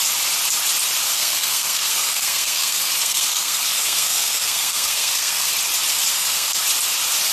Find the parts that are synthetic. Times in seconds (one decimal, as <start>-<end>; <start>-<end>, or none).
1.1-5.5; 6.1-6.6